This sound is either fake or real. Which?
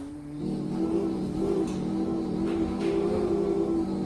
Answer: fake